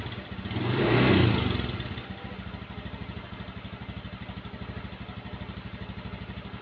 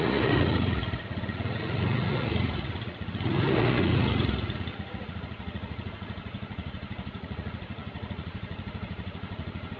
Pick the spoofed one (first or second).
second